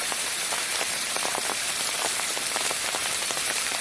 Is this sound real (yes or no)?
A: no